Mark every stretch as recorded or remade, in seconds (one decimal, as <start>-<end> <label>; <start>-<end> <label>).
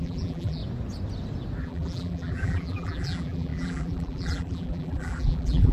0.0-0.6 remade; 0.6-1.6 recorded; 1.6-5.7 remade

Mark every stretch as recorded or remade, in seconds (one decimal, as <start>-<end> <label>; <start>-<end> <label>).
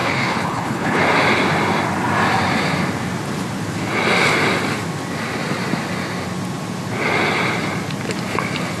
0.0-1.0 remade; 1.0-8.8 recorded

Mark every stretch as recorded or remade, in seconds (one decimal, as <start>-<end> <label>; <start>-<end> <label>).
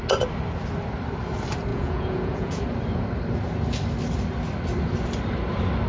0.0-1.7 recorded; 1.7-2.6 remade; 2.6-5.9 recorded